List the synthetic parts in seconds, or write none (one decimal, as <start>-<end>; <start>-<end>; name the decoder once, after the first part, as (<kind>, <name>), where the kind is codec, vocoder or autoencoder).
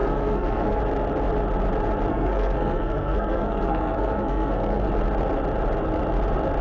0.0-0.8 (codec, SNAC); 2.1-4.9